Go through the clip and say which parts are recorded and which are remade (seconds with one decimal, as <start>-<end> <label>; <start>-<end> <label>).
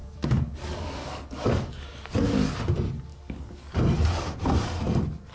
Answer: 0.0-2.5 remade; 2.5-3.1 recorded; 3.1-3.7 remade; 3.7-5.3 recorded